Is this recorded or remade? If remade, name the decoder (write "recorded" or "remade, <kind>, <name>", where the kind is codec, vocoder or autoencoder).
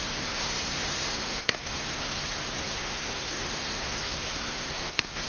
remade, codec, SNAC